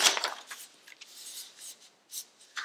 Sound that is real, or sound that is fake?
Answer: fake